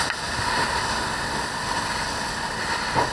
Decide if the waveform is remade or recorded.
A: recorded